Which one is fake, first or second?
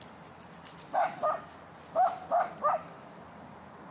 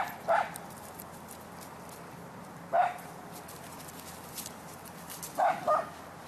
second